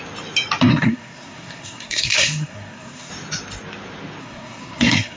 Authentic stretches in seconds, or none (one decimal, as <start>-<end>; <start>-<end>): 0.0-0.7; 3.1-4.2